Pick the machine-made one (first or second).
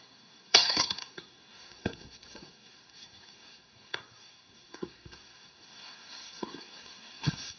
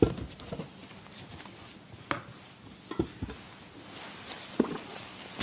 first